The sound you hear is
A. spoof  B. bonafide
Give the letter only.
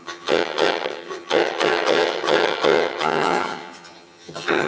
A